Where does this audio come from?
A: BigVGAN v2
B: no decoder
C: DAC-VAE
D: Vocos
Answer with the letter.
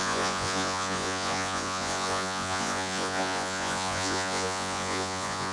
D